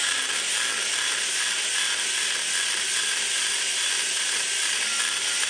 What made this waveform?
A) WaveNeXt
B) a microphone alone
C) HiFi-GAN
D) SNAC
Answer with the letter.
B